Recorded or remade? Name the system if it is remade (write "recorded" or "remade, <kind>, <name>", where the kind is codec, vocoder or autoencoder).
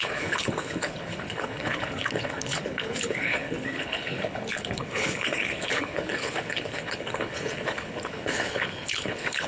remade, codec, HILCodec